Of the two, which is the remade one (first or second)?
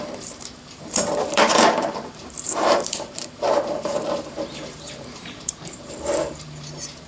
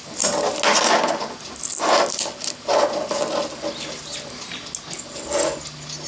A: first